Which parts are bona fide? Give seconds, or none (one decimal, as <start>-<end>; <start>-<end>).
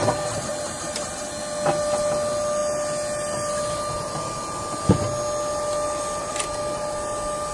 0.0-7.5